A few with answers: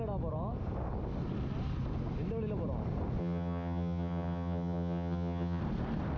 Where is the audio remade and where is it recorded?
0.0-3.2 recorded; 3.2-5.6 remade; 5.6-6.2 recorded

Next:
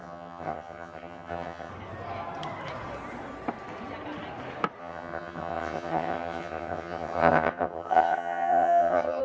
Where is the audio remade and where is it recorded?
0.0-1.7 remade; 1.7-4.8 recorded; 4.8-9.2 remade

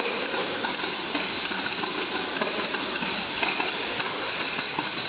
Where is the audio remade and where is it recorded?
0.0-5.1 recorded

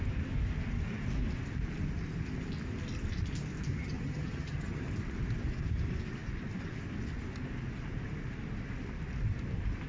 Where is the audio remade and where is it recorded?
0.0-3.7 recorded; 3.7-4.9 remade; 4.9-9.9 recorded

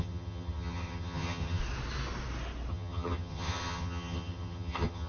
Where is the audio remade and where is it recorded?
0.0-1.6 remade; 1.6-2.7 recorded; 2.7-5.1 remade

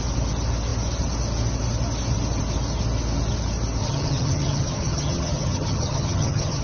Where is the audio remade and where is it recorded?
0.0-3.8 recorded; 3.8-6.6 remade

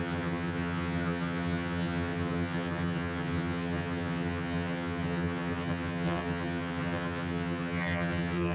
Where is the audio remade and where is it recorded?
0.0-8.5 remade

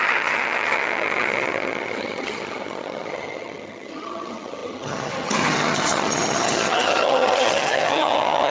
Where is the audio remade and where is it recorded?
0.0-8.5 remade